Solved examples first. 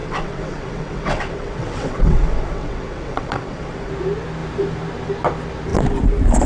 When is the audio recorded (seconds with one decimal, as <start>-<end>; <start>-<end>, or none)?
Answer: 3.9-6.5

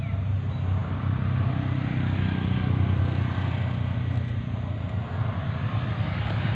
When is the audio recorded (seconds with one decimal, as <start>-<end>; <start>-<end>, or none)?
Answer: 0.0-6.5

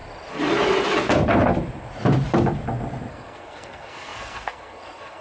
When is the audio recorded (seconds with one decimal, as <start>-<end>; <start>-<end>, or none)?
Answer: 0.0-3.1

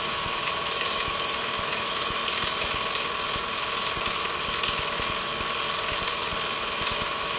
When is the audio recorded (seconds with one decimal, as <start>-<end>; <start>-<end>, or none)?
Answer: 2.2-6.6

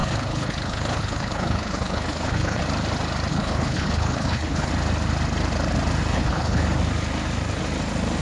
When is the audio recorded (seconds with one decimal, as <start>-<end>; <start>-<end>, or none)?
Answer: 2.6-3.3; 4.7-6.1; 6.6-8.2

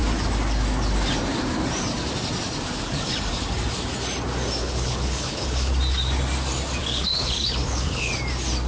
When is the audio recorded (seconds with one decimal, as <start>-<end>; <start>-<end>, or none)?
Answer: 0.0-4.6; 5.7-6.8; 8.1-8.7

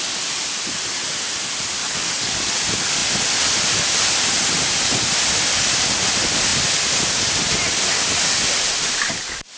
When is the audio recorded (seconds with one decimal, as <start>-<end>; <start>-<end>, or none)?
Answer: 0.0-1.8; 2.5-9.6